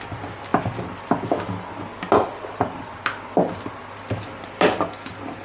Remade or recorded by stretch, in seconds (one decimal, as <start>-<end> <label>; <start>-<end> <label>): 0.0-5.4 recorded